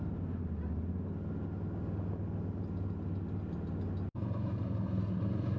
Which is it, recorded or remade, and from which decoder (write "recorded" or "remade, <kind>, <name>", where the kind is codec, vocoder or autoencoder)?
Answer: recorded